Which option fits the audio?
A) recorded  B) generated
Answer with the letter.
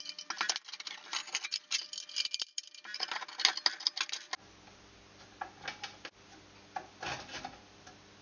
A